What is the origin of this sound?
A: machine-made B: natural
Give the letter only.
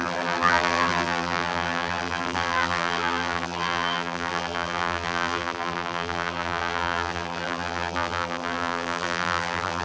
A